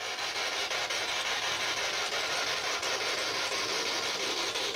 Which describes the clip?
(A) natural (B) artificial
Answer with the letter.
A